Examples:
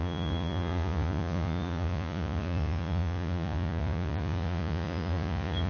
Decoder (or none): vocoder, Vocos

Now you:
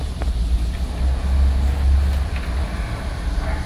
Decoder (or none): none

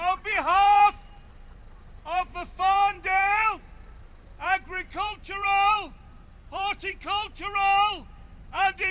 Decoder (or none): vocoder, BigVGAN v2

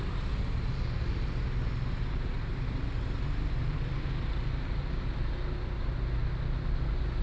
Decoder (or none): none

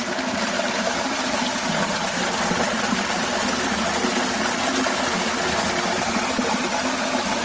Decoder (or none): none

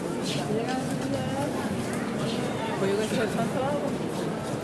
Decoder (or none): none